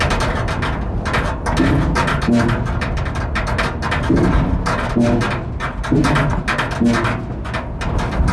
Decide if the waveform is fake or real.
real